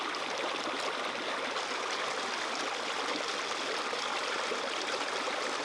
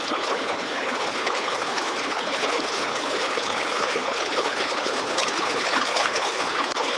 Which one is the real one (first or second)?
first